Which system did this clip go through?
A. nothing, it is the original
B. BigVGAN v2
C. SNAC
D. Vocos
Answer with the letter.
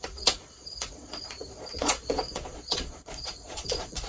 D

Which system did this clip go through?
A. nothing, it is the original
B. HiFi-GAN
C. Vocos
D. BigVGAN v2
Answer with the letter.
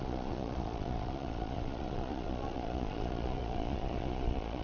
C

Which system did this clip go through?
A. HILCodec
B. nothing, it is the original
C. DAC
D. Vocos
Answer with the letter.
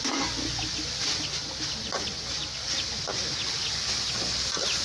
B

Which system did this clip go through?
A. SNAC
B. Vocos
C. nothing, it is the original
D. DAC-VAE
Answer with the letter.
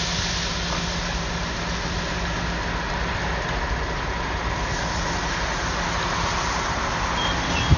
C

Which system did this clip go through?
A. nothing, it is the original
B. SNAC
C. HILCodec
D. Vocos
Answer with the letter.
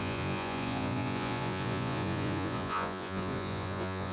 D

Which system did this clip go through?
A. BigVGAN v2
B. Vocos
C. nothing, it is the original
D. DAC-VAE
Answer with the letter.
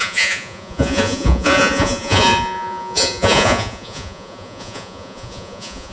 B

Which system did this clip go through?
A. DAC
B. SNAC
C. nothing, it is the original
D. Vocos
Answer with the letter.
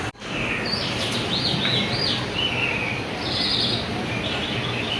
C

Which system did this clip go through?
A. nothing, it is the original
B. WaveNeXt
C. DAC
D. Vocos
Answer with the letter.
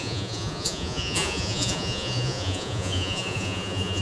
D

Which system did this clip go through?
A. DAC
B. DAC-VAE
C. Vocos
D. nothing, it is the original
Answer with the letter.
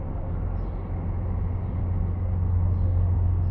D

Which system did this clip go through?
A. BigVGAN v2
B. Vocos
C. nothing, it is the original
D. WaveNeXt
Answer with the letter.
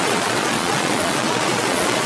B